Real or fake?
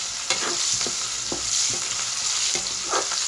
real